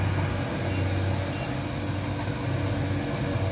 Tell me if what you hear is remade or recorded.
recorded